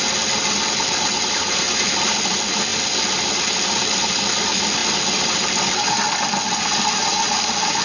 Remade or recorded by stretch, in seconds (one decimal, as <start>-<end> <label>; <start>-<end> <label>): 0.0-7.8 recorded